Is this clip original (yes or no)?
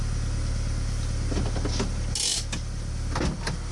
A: yes